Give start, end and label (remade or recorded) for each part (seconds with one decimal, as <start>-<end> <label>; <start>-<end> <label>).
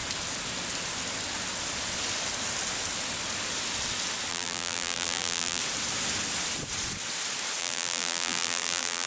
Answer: 0.0-4.3 recorded; 4.3-5.6 remade; 5.6-7.6 recorded; 7.6-9.1 remade